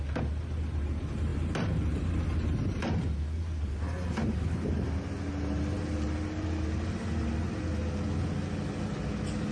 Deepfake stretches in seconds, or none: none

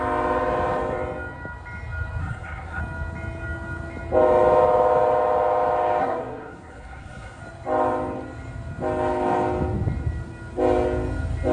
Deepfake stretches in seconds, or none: 2.2-2.8 (codec, SNAC); 6.0-7.4

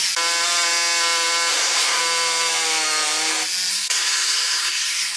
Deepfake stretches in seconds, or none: 1.5-2.0 (codec, SNAC); 3.7-5.2

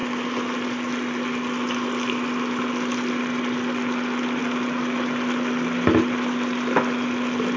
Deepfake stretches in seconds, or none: none

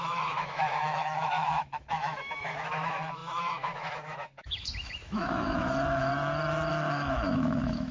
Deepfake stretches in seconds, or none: 0.0-6.1 (autoencoder, DAC-VAE); 6.7-7.9

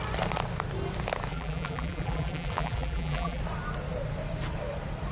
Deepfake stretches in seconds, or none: 1.3-3.4 (vocoder, BigVGAN v2)

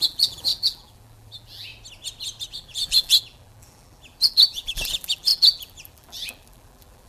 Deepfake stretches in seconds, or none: 0.0-1.7 (vocoder, BigVGAN v2); 2.6-7.1